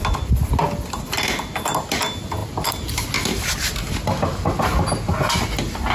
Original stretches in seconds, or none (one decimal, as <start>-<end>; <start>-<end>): 0.0-5.9